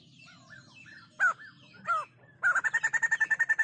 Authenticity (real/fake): real